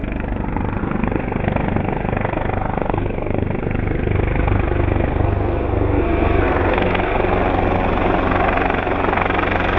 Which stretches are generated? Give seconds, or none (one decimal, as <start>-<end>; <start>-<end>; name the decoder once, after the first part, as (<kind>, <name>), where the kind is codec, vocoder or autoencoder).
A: 0.8-7.2 (codec, SNAC)